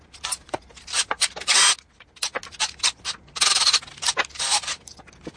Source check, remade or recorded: recorded